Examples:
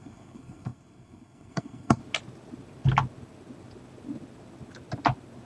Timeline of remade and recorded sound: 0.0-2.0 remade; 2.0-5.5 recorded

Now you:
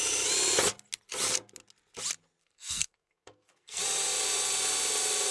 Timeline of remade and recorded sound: 0.0-2.4 recorded; 2.4-3.8 remade; 3.8-5.3 recorded

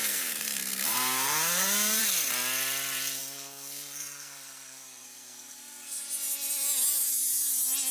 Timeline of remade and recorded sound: 0.0-2.0 remade; 2.0-3.2 recorded; 3.2-6.0 remade; 6.0-7.9 recorded

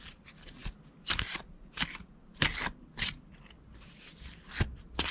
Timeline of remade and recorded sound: 0.0-5.1 recorded

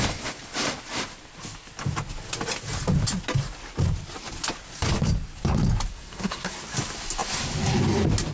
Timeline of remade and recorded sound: 0.0-5.9 recorded; 5.9-6.6 remade; 6.6-8.3 recorded

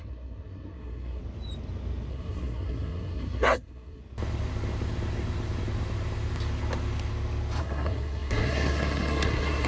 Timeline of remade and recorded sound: 0.0-1.2 remade; 1.2-2.1 recorded; 2.1-4.0 remade; 4.0-7.6 recorded; 7.6-9.7 remade

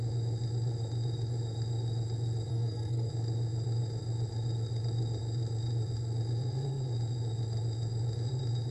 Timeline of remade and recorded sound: 0.0-2.5 recorded; 2.5-3.1 remade; 3.1-8.7 recorded